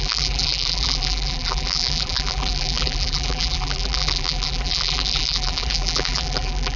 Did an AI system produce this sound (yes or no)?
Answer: yes